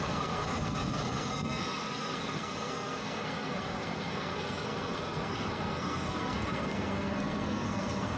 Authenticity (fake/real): fake